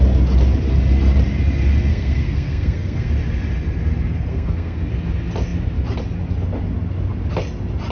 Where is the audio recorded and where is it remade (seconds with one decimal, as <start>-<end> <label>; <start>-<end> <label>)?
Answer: 0.0-1.9 recorded; 1.9-3.1 remade; 3.1-4.3 recorded; 4.3-4.9 remade; 4.9-7.9 recorded